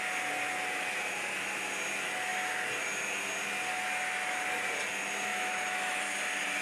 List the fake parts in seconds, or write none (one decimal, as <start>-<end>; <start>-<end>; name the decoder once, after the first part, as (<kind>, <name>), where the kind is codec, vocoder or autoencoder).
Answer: 5.3-6.0 (autoencoder, DAC-VAE)